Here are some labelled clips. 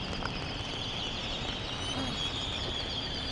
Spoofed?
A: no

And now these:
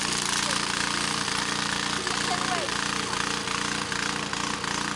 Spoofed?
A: no